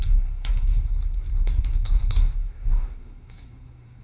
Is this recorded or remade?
remade